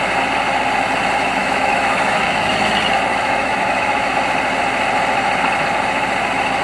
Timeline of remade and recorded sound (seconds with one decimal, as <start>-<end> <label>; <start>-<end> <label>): 0.0-1.4 recorded; 1.4-2.7 remade; 2.7-3.1 recorded; 3.1-4.1 remade; 4.1-6.6 recorded